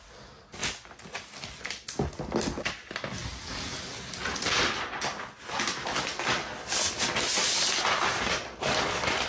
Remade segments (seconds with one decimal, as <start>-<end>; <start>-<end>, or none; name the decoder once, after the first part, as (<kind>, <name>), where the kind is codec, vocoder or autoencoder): none